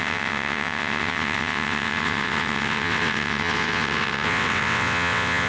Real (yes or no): no